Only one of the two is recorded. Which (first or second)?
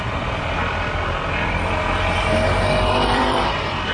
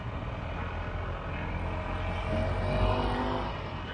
second